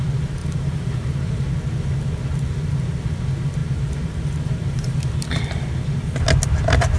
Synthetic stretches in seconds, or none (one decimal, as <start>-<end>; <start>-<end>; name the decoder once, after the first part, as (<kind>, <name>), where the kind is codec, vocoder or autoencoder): 0.4-1.5 (vocoder, BigVGAN v2); 3.6-5.0